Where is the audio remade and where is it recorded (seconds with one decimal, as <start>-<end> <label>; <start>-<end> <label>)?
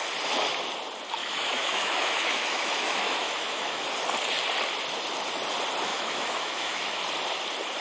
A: 0.0-1.2 recorded; 1.2-3.8 remade; 3.8-5.9 recorded; 5.9-7.0 remade; 7.0-7.8 recorded